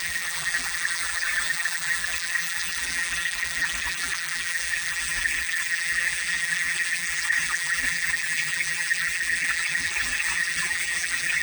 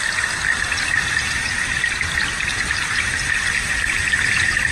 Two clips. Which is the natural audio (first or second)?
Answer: second